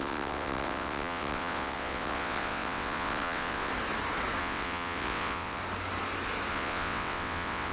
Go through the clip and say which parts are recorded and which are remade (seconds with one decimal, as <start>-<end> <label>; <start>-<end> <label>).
0.0-3.7 remade; 3.7-4.4 recorded; 4.4-5.6 remade; 5.6-6.5 recorded; 6.5-7.7 remade